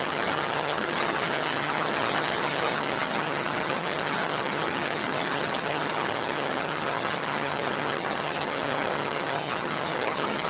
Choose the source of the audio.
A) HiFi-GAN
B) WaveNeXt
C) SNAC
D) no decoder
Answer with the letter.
A